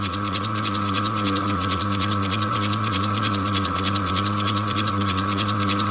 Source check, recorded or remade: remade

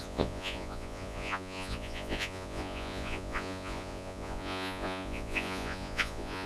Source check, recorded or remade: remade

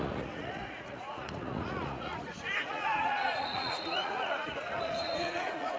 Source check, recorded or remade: remade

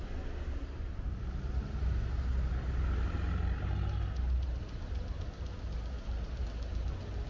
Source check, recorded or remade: recorded